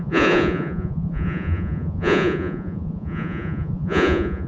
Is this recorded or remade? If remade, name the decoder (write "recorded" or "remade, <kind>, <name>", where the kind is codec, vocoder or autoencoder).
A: remade, vocoder, Vocos